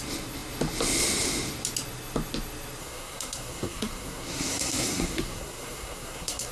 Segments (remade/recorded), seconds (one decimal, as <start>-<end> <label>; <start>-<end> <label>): 0.0-2.8 recorded; 2.8-6.5 remade

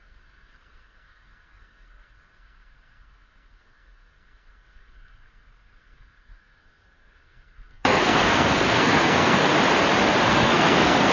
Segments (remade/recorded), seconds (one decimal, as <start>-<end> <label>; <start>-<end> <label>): 0.0-9.5 remade; 9.5-10.3 recorded; 10.3-11.1 remade

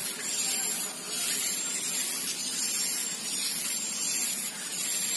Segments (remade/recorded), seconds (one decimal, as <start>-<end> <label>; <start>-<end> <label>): 0.0-5.2 recorded

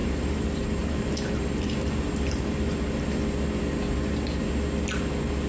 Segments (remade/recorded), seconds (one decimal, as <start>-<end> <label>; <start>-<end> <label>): 0.0-3.0 remade; 3.0-5.5 recorded

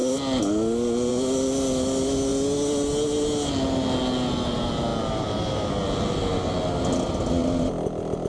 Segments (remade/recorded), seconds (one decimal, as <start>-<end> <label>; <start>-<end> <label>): 0.0-8.3 recorded

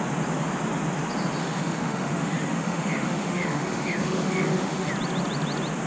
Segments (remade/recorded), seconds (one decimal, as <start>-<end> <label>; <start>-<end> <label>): 0.0-1.4 recorded; 1.4-4.9 remade; 4.9-5.9 recorded